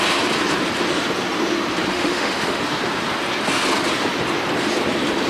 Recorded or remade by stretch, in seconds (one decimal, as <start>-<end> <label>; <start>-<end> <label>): 0.0-1.9 recorded; 1.9-2.6 remade; 2.6-5.3 recorded